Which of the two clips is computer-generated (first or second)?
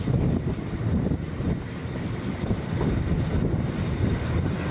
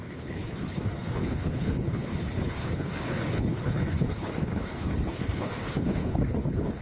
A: second